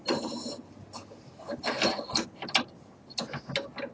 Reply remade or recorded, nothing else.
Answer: recorded